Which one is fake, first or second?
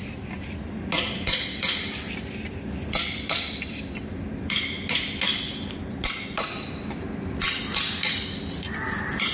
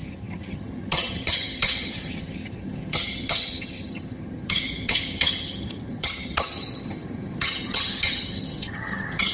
second